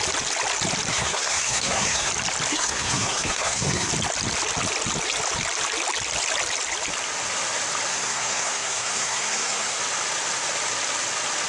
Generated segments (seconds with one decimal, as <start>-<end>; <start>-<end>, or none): 0.9-2.1; 2.5-3.9; 7.9-9.8